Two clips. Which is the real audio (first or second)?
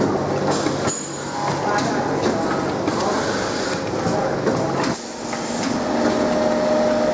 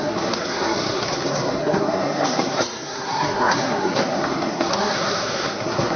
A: first